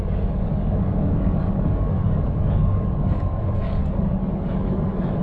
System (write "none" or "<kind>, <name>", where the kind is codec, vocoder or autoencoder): codec, DAC